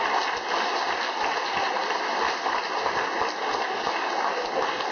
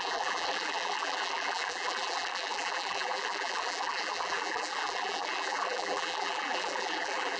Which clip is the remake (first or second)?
second